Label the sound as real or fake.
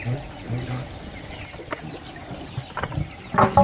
real